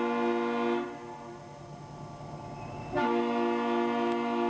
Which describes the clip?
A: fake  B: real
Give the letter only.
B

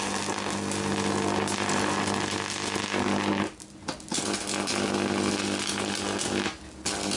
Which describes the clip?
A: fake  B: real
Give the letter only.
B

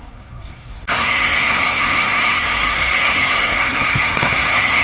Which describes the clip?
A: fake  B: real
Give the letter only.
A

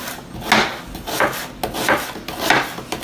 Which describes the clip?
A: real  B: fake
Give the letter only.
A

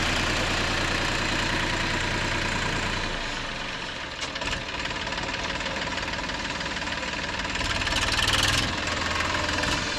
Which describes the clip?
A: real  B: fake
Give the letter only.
A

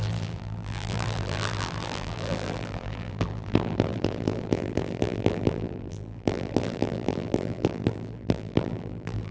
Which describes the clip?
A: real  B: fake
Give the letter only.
B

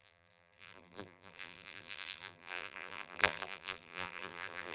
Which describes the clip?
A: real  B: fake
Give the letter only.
B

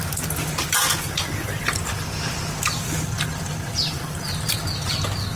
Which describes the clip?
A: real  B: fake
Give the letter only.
A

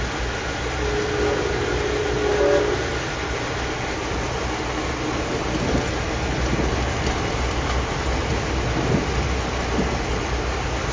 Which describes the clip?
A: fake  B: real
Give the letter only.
B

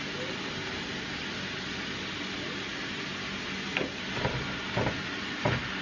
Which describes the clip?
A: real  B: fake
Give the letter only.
A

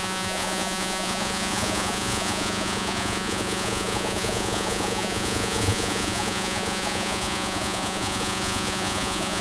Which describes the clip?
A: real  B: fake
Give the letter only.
B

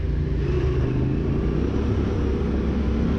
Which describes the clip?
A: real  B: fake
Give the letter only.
A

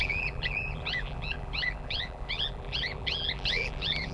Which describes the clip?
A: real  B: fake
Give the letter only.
B